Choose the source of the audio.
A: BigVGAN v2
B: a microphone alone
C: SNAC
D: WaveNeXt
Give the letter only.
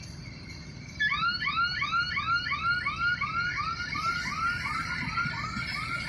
B